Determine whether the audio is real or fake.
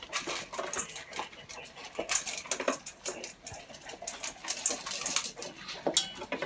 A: real